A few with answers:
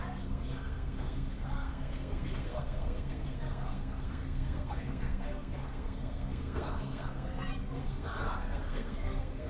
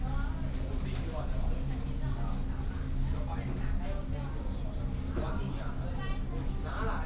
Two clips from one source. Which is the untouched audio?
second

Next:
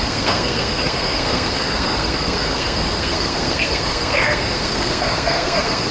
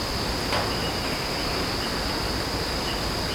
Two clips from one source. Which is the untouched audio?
second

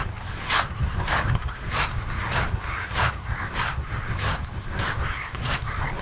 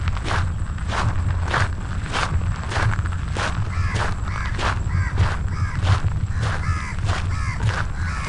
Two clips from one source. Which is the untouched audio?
second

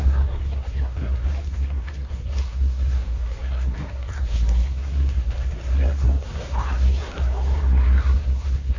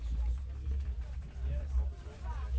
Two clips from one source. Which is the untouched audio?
second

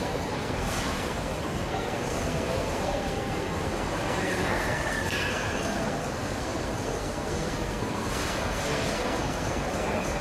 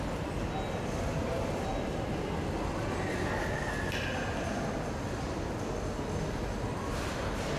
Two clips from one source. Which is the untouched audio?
second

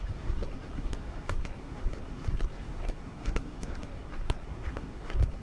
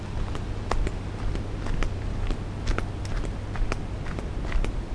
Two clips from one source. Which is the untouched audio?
second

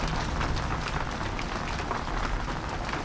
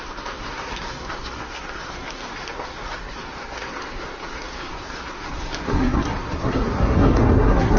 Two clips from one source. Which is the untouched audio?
first